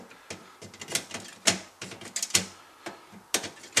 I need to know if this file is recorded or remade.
recorded